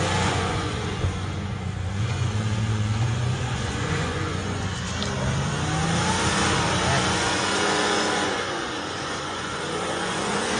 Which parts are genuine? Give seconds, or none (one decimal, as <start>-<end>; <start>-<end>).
4.9-7.1